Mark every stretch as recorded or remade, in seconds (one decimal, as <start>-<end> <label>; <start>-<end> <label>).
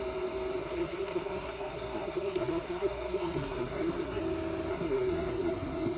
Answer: 0.0-0.6 recorded; 0.6-4.2 remade; 4.2-4.7 recorded; 4.7-6.0 remade